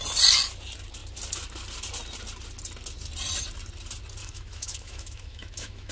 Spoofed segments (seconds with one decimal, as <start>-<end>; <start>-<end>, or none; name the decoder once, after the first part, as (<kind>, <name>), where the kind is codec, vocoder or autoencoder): 4.2-5.9 (autoencoder, DAC-VAE)

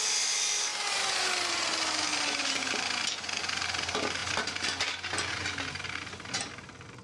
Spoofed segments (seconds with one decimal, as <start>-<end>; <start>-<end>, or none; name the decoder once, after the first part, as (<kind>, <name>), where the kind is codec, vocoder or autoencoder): none